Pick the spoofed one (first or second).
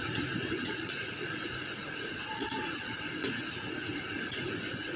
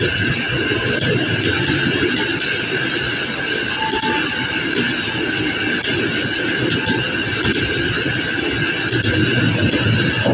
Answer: first